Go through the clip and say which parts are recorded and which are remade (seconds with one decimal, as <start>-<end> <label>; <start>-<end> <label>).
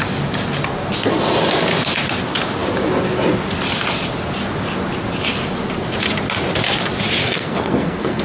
0.0-7.2 recorded; 7.2-8.2 remade